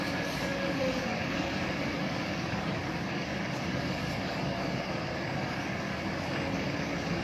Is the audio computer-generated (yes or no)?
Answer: yes